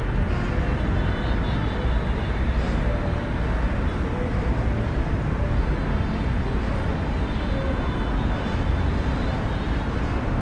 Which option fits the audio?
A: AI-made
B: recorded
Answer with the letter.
B